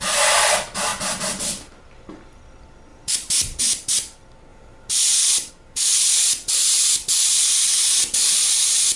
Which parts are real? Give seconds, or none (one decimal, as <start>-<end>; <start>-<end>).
0.0-2.9; 3.6-4.5; 5.5-5.9; 7.4-9.0